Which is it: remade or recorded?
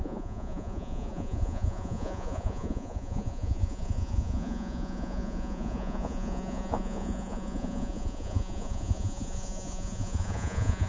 remade